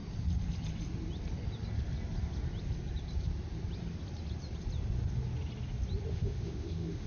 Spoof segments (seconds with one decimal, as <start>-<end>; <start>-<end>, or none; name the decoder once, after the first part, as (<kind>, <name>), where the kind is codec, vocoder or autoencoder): 6.1-7.1 (autoencoder, DAC-VAE)